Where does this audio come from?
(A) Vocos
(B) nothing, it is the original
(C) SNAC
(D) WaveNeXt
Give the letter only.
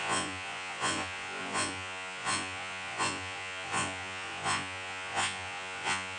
A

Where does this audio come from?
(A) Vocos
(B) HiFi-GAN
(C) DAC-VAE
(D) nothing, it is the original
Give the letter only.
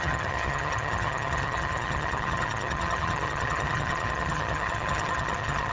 B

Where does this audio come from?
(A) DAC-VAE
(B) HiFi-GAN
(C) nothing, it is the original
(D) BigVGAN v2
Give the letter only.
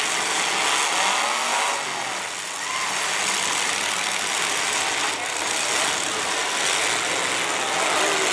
C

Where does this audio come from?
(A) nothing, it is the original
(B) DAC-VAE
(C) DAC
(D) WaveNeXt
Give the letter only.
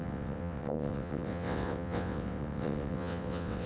D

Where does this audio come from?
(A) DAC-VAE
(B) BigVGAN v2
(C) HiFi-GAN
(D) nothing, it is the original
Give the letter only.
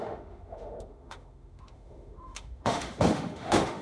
A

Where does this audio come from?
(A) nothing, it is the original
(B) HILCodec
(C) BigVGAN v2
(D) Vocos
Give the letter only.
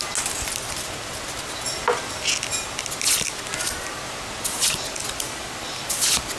A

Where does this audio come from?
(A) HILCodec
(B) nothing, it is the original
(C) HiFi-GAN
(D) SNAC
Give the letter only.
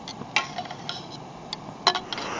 B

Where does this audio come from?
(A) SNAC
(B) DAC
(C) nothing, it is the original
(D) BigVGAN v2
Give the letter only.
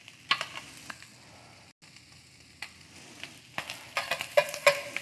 C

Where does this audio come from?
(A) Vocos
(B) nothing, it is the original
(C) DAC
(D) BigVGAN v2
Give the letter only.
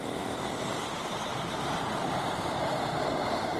D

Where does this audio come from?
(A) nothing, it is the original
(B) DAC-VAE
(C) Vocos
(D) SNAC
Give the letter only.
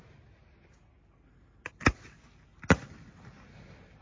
A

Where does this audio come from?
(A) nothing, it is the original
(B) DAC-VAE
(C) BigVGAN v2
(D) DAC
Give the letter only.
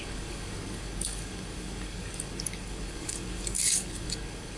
D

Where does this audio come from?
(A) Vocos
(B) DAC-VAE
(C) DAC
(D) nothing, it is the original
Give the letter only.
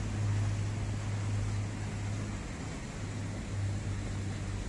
D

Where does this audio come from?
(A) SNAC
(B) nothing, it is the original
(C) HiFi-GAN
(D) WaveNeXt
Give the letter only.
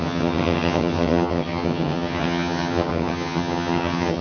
C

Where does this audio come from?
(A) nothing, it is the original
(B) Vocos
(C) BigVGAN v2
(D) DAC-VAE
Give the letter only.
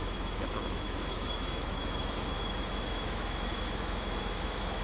D